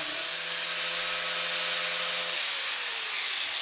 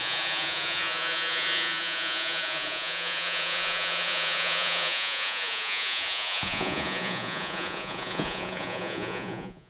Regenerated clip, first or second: second